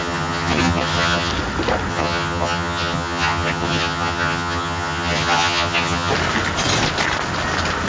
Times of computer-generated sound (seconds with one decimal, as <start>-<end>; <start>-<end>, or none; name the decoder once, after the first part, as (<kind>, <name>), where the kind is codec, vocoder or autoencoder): 0.0-1.3 (vocoder, HiFi-GAN); 1.9-6.1